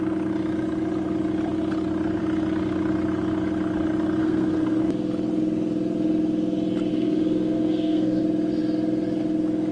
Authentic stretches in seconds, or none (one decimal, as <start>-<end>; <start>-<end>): 0.0-4.2; 4.8-6.9; 8.2-9.7